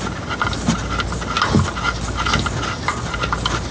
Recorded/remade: recorded